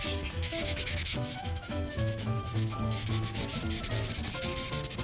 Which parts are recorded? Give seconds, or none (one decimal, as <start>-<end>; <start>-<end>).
0.0-0.4; 3.4-5.0